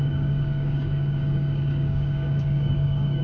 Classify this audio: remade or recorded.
remade